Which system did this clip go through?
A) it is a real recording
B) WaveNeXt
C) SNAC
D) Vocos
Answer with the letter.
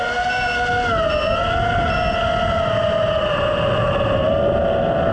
A